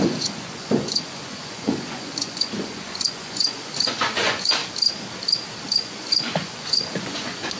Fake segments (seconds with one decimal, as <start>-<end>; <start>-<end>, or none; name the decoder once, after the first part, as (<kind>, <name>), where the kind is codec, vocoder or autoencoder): 0.0-4.6 (vocoder, Vocos); 5.7-7.6